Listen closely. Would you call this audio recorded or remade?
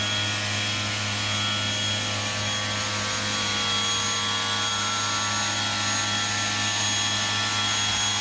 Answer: recorded